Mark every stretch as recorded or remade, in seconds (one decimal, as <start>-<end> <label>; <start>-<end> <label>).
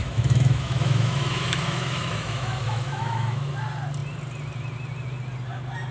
0.0-3.5 remade; 3.5-5.9 recorded